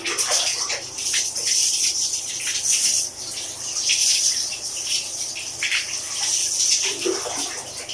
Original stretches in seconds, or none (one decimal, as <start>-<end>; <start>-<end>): 0.0-1.6; 2.3-4.0; 5.3-7.9